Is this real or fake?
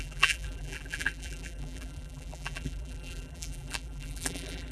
fake